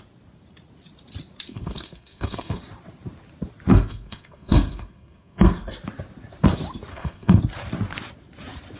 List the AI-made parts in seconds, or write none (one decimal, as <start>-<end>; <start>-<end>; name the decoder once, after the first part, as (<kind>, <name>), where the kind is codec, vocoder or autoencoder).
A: 1.5-2.6 (codec, SNAC); 3.7-5.7; 6.9-7.4